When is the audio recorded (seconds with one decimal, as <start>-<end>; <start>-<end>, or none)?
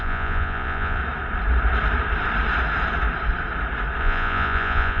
1.0-4.0